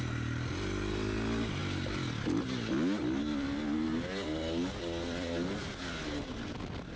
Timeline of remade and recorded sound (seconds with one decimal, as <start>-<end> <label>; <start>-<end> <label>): 0.0-7.0 recorded